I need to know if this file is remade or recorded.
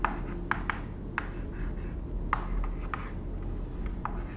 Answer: recorded